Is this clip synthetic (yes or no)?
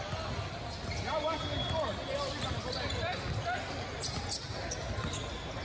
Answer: no